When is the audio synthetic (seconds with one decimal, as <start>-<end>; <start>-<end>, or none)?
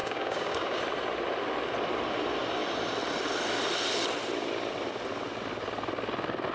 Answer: 0.0-0.8